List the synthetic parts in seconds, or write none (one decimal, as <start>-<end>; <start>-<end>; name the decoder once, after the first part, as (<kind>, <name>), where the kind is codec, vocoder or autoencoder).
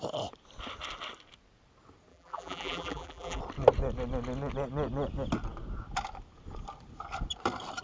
2.1-3.4 (vocoder, BigVGAN v2)